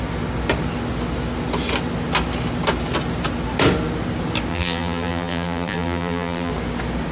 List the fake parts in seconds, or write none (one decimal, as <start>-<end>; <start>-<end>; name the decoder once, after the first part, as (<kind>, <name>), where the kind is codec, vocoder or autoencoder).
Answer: 4.5-6.5 (vocoder, BigVGAN v2)